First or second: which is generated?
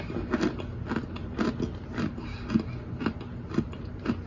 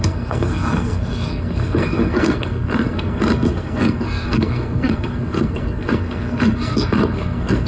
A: second